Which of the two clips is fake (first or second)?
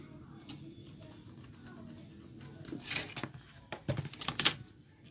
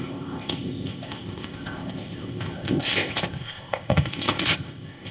second